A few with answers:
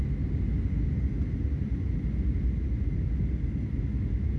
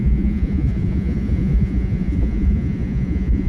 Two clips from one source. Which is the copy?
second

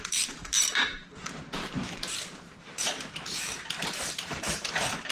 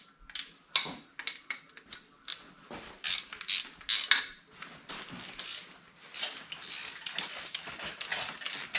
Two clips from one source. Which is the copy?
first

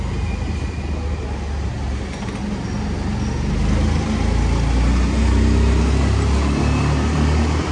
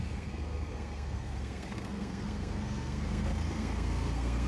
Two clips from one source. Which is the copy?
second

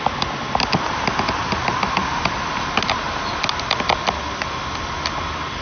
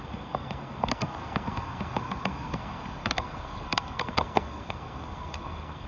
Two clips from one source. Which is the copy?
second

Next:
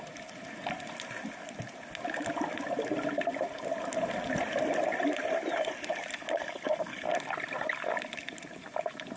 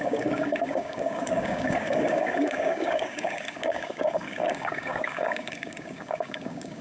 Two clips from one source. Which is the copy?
second